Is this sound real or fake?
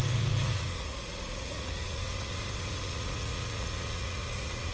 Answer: fake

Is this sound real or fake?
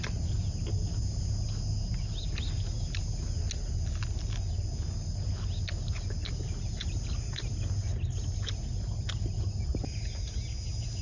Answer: real